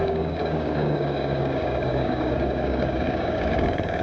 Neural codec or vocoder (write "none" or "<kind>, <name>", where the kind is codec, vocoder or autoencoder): codec, DAC